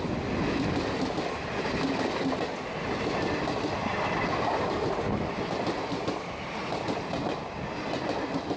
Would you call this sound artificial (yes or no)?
no